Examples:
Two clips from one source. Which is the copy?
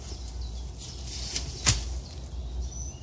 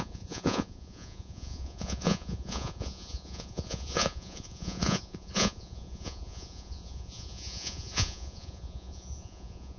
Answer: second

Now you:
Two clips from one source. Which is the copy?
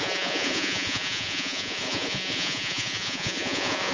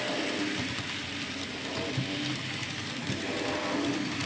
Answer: first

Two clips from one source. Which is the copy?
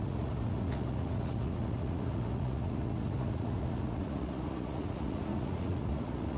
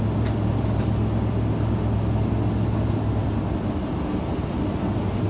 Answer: first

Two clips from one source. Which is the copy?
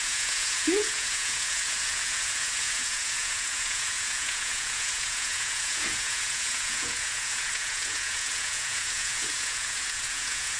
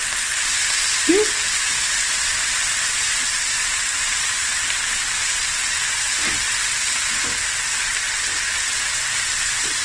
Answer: first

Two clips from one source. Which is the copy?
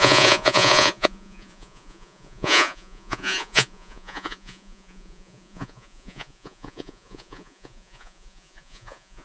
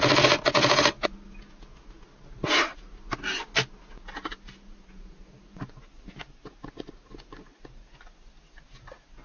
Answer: first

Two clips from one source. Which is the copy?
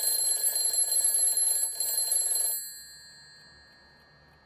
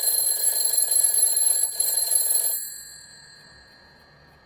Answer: second